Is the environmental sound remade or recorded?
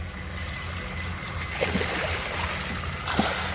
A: recorded